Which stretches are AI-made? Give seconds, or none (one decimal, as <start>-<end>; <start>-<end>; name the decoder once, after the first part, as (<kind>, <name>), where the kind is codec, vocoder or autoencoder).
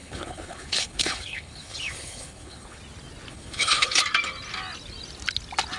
0.0-2.8 (codec, HILCodec); 3.3-4.0